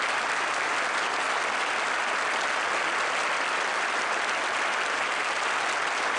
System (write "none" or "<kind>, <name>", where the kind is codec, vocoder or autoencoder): none